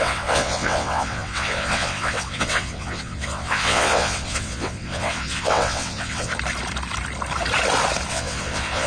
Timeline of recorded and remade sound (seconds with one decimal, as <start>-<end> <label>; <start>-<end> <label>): 0.0-6.3 remade; 6.3-8.1 recorded; 8.1-8.9 remade

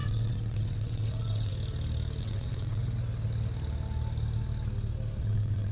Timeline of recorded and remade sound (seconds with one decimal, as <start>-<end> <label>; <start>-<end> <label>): 0.0-1.5 remade; 1.5-2.2 recorded; 2.2-2.8 remade; 2.8-5.2 recorded; 5.2-5.7 remade

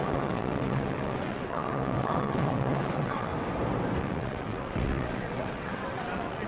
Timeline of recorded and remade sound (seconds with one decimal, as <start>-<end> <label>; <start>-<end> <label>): 0.0-3.3 remade; 3.3-4.0 recorded; 4.0-6.5 remade

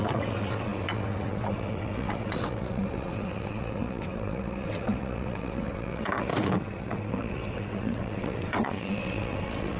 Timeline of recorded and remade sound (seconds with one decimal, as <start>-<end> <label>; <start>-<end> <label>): 0.0-9.8 remade

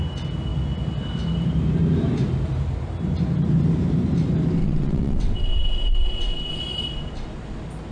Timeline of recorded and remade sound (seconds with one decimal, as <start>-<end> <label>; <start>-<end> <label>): 0.0-4.6 recorded; 4.6-6.5 remade; 6.5-7.9 recorded

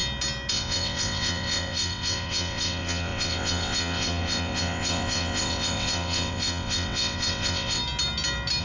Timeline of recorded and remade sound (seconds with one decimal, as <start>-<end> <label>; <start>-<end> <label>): 0.0-0.5 recorded; 0.5-7.8 remade; 7.8-8.6 recorded